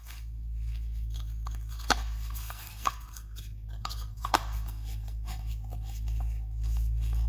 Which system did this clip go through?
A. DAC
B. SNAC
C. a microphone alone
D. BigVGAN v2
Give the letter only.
B